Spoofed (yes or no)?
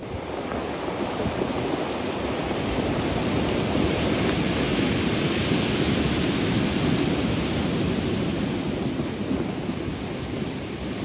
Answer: no